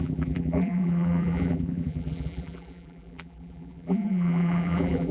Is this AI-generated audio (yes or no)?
yes